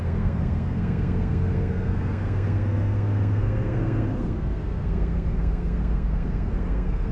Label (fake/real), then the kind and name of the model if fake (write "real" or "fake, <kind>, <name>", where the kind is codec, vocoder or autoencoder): fake, codec, SNAC